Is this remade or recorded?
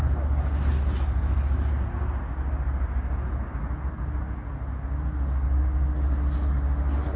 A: recorded